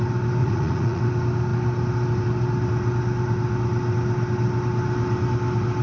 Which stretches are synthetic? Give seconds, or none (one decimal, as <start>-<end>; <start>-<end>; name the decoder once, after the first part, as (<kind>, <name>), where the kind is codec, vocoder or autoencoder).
0.4-1.0 (vocoder, Vocos)